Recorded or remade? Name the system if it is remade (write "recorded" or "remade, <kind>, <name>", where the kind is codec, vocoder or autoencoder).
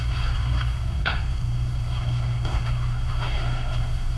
remade, codec, SNAC